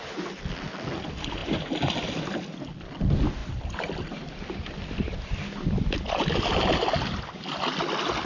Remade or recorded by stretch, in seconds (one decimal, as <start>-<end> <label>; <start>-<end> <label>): 0.0-8.2 recorded